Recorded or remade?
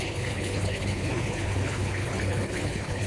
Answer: remade